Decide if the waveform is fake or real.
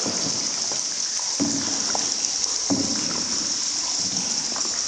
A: real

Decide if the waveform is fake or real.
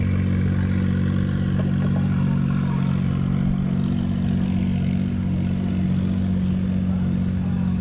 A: real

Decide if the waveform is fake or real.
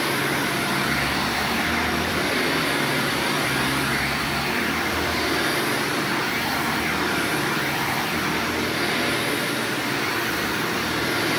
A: fake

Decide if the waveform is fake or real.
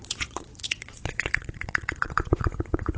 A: fake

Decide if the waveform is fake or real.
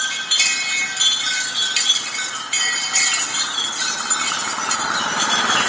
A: real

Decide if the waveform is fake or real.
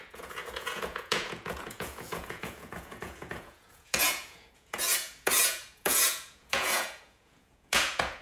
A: fake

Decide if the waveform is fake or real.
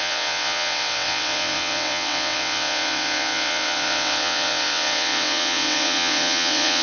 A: fake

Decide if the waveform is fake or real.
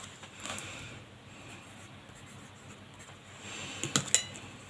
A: real